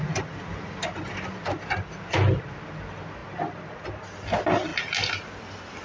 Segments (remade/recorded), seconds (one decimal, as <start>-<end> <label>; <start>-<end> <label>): 0.0-5.8 recorded